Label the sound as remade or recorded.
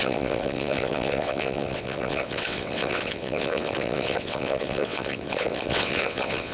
remade